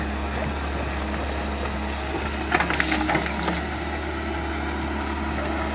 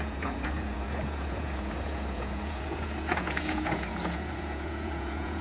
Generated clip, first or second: second